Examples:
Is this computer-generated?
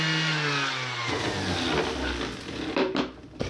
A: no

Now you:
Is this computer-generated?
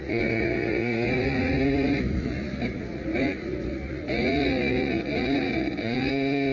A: yes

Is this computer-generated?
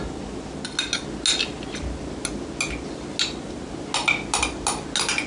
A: no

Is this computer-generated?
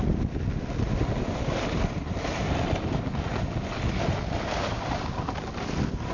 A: no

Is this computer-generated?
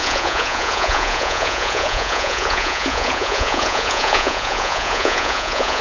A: yes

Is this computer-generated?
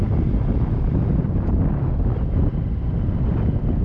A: no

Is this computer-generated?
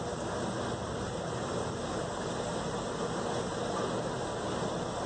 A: no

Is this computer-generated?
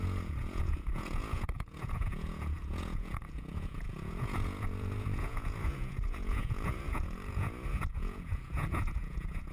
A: yes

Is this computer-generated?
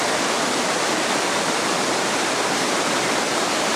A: no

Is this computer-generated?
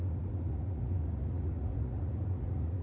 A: yes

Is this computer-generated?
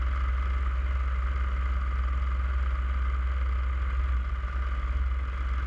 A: no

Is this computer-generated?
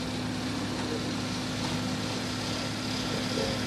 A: no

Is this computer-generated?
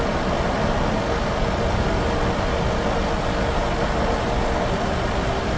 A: no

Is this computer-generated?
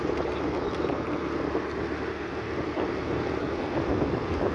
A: no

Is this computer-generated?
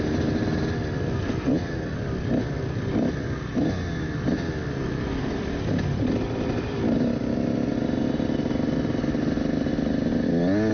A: no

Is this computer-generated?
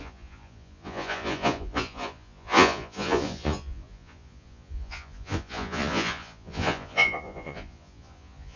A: yes